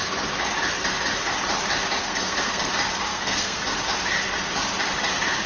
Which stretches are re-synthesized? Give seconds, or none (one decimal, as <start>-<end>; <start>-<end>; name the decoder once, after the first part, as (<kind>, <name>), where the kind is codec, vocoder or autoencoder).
2.0-2.7 (codec, SNAC); 3.1-3.6